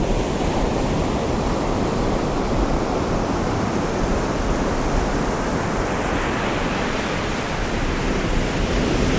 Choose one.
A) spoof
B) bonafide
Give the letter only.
B